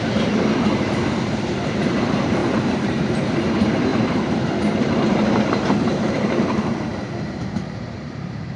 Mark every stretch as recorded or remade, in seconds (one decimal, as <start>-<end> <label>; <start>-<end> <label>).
0.0-6.9 remade; 6.9-7.5 recorded; 7.5-8.6 remade